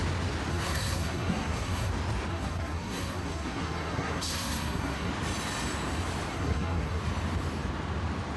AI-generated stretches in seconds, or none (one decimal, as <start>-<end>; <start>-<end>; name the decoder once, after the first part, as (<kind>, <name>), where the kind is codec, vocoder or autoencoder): 0.5-1.9 (codec, SNAC); 2.3-5.1; 6.3-7.0

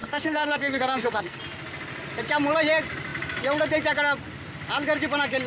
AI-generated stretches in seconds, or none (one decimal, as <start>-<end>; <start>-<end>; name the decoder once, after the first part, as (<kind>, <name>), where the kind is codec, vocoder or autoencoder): 0.0-1.4 (codec, SNAC)